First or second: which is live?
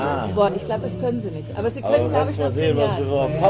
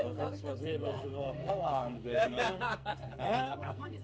first